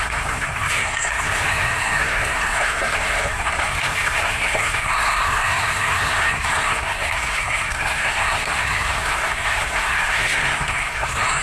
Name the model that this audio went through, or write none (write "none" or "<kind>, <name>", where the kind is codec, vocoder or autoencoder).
codec, SNAC